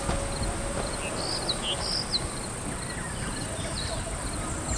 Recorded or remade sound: recorded